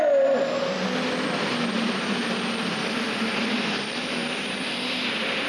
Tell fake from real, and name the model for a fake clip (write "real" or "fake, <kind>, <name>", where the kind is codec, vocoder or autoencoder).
real